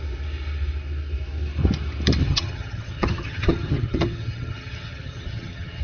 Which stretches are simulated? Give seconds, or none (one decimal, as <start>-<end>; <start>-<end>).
2.2-5.8